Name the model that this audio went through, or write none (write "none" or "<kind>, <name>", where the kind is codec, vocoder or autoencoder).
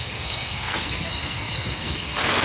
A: codec, SNAC